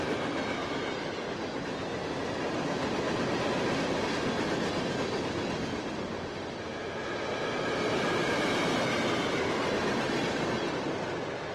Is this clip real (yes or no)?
yes